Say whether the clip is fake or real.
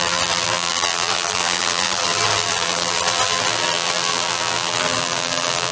fake